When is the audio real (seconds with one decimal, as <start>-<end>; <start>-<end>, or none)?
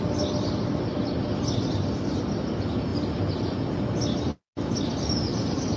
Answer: 0.0-5.8